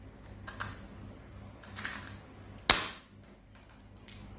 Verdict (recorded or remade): recorded